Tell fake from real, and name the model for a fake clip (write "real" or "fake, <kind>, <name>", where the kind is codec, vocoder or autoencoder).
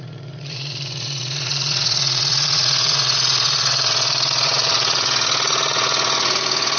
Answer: fake, vocoder, Vocos